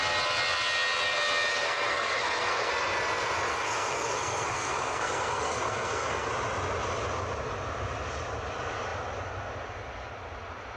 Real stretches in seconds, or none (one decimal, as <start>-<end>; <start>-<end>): 0.0-1.5; 2.7-3.5; 6.3-10.8